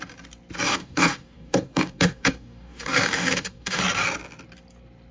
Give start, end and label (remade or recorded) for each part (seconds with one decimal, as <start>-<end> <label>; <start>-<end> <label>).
0.0-0.7 recorded; 0.7-3.8 remade; 3.8-5.1 recorded